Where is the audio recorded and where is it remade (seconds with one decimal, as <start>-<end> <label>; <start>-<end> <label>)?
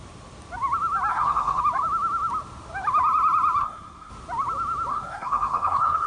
0.0-1.1 recorded; 1.1-1.6 remade; 1.6-3.6 recorded; 3.6-4.1 remade; 4.1-4.9 recorded; 4.9-6.1 remade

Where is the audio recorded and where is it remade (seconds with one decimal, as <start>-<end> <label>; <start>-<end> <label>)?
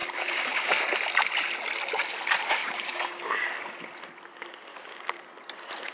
0.0-0.8 remade; 0.8-2.6 recorded; 2.6-3.5 remade; 3.5-4.7 recorded; 4.7-5.3 remade; 5.3-5.9 recorded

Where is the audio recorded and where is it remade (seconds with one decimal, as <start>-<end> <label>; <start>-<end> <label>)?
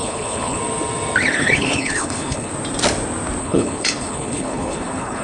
0.0-0.6 remade; 0.6-1.3 recorded; 1.3-2.5 remade; 2.5-3.4 recorded; 3.4-5.2 remade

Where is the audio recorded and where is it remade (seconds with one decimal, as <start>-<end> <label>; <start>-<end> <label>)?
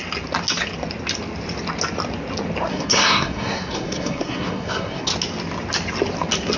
0.0-2.7 recorded; 2.7-5.1 remade; 5.1-6.6 recorded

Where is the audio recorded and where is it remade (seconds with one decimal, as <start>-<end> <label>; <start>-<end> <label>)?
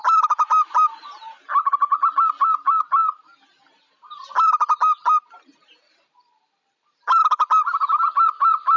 0.0-8.8 recorded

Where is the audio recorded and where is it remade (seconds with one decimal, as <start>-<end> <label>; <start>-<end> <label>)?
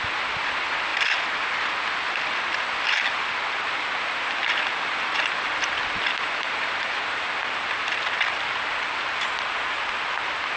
0.0-10.6 remade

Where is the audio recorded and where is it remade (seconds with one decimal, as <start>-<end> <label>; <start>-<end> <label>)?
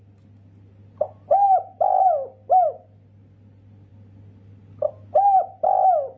0.0-6.2 recorded